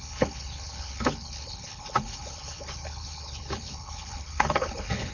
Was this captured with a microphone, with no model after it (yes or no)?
no